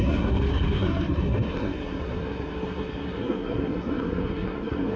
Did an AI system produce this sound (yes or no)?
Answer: yes